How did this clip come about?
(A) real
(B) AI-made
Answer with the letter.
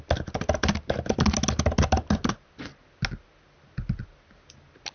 A